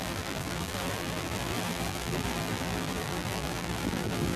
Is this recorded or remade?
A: remade